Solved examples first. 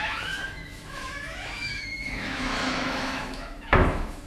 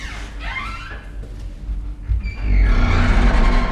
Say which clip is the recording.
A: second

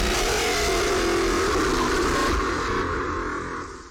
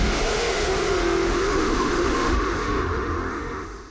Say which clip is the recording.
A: first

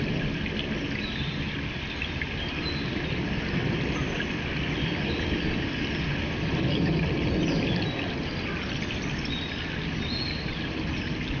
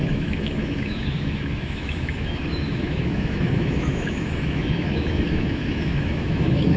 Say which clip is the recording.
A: first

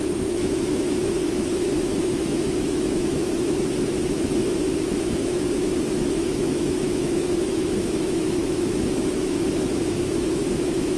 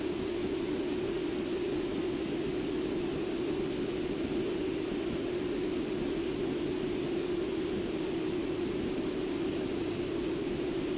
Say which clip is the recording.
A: second